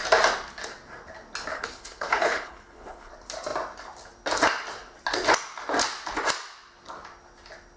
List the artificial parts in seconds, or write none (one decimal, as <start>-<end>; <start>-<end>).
1.5-3.1